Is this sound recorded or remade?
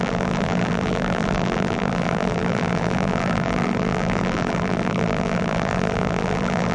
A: remade